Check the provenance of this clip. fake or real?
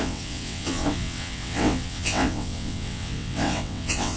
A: fake